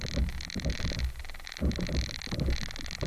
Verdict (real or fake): real